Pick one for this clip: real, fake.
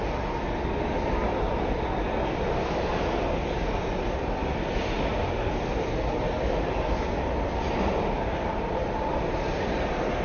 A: real